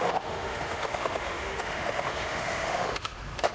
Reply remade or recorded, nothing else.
remade